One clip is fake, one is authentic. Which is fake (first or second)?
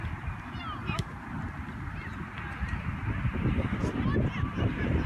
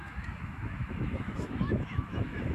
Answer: second